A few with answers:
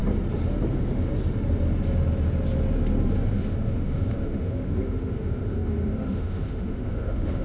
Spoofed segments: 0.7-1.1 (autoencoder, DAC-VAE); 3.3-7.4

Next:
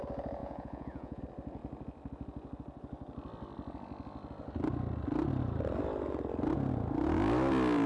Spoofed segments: 0.4-1.2 (vocoder, Vocos)

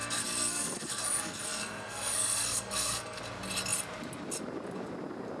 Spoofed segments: 0.0-3.2 (codec, SNAC)